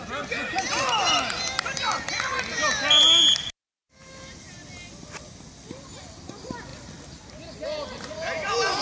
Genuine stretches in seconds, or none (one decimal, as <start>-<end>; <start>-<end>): 0.0-8.8